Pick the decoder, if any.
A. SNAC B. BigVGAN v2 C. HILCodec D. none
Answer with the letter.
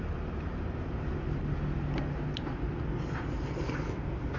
D